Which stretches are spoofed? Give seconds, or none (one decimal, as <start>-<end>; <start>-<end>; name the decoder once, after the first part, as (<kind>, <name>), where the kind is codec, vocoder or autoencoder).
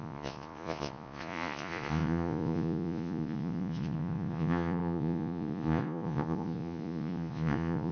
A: 0.0-7.9 (vocoder, Vocos)